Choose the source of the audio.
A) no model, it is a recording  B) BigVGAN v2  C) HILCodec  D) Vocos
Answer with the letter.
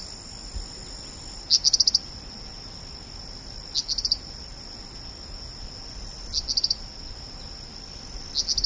A